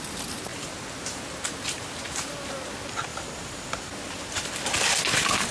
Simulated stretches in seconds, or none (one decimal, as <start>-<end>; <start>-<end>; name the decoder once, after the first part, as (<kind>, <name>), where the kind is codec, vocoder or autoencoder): 0.5-1.2 (vocoder, BigVGAN v2); 3.1-4.5